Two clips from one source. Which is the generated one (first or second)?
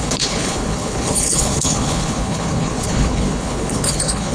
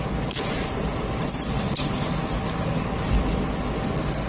first